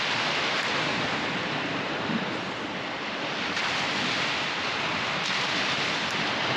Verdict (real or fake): fake